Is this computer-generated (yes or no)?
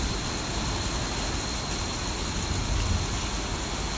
no